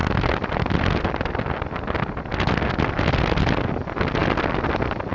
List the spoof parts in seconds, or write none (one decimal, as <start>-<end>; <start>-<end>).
none